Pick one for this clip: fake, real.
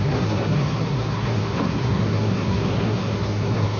fake